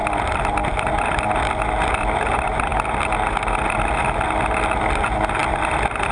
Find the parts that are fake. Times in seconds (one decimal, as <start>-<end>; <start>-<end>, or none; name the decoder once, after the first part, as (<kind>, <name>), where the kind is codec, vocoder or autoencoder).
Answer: 0.0-2.7 (vocoder, BigVGAN v2); 4.8-6.1

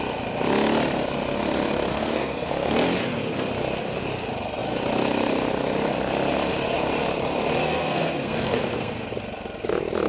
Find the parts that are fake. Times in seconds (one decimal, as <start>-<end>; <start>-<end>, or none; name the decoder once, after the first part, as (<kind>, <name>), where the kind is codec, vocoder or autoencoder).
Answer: 1.9-2.5 (codec, SNAC); 3.0-3.5; 7.6-9.1